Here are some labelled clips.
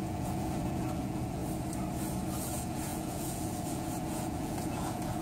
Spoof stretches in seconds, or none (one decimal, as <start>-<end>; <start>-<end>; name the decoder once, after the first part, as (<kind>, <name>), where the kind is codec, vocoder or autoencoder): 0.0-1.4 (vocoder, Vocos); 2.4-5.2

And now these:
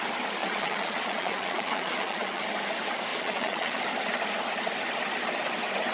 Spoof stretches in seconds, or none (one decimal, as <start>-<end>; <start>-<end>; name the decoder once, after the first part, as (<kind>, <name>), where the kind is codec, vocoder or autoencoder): 0.4-2.4 (vocoder, Vocos); 3.1-3.8

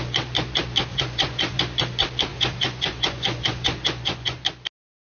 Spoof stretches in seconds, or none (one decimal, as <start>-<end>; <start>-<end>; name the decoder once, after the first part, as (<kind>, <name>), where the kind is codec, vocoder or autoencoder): 0.9-1.6 (vocoder, Vocos); 2.3-4.4

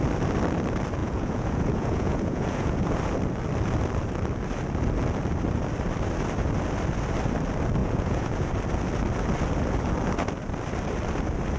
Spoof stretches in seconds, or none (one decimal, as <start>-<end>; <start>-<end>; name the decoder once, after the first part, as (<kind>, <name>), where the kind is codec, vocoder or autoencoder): 1.0-2.8 (vocoder, Vocos); 7.8-8.5

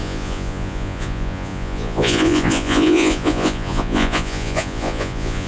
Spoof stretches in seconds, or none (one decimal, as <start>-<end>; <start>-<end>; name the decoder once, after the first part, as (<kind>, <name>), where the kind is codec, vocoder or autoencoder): 0.0-5.5 (vocoder, Vocos)

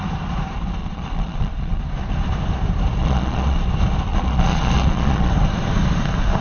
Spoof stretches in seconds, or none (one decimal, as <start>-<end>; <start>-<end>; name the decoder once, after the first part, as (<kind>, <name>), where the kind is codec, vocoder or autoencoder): 0.8-1.8 (vocoder, Vocos); 3.0-3.6; 4.1-5.3

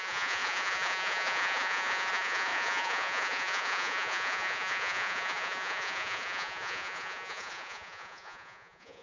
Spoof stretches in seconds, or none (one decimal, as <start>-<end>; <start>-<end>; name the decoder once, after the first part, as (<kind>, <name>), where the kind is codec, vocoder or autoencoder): 0.0-9.0 (vocoder, Vocos)

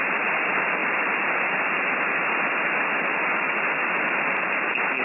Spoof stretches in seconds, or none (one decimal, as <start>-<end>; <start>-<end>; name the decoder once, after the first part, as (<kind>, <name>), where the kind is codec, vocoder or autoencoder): none